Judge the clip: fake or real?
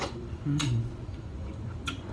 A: fake